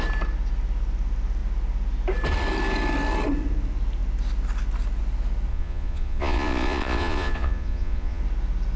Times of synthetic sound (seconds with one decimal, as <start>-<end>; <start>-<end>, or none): 5.5-8.2